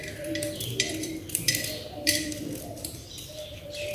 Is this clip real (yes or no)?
no